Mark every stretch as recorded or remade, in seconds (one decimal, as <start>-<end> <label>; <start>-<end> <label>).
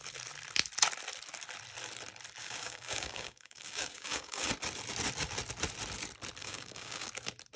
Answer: 0.0-2.4 recorded; 2.4-4.5 remade; 4.5-6.4 recorded; 6.4-7.1 remade; 7.1-7.6 recorded